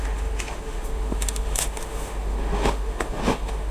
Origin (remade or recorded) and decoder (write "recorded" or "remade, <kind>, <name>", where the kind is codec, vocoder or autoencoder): remade, autoencoder, DAC-VAE